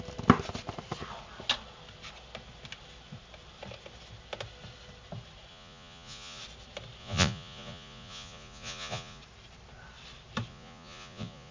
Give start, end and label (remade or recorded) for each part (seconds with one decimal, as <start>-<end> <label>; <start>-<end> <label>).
0.0-5.5 recorded; 5.5-6.4 remade; 6.4-7.0 recorded; 7.0-9.2 remade; 9.2-10.5 recorded; 10.5-11.5 remade